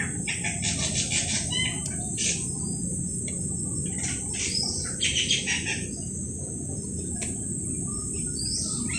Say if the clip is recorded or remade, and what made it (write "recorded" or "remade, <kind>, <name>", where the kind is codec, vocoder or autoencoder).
recorded